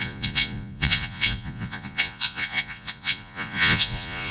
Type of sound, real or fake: fake